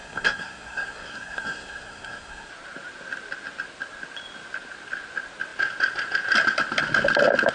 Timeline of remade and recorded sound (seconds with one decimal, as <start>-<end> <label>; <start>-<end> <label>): 0.0-2.5 remade; 2.5-7.5 recorded